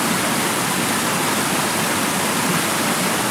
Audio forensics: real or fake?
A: real